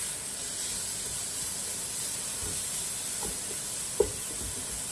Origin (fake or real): real